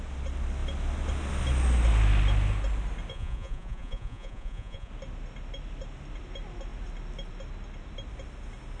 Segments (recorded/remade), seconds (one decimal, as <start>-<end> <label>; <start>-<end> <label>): 0.0-3.1 recorded; 3.1-4.9 remade; 4.9-8.8 recorded